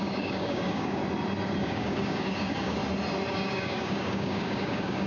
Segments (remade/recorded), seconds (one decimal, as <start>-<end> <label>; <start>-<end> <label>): 0.0-1.0 remade; 1.0-1.6 recorded; 1.6-2.8 remade; 2.8-3.3 recorded; 3.3-5.1 remade

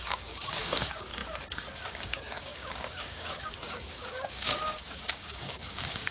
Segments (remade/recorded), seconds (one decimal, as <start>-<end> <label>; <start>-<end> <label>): 0.0-1.2 remade; 1.2-1.9 recorded; 1.9-6.1 remade

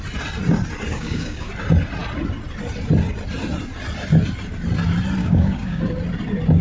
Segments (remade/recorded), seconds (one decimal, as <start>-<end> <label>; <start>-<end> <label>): 0.0-0.9 recorded; 0.9-1.5 remade; 1.5-5.2 recorded; 5.2-5.8 remade; 5.8-6.6 recorded